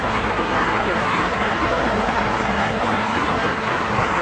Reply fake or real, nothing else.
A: fake